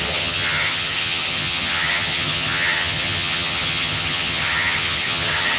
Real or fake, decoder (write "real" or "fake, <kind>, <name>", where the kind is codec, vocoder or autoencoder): fake, vocoder, HiFi-GAN